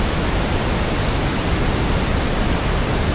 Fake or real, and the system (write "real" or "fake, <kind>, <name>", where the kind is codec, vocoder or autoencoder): real